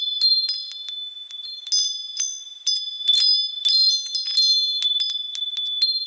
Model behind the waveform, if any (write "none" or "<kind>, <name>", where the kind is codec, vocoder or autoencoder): none